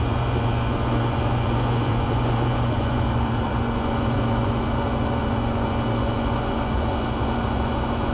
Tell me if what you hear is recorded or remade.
remade